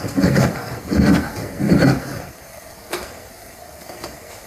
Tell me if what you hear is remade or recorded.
remade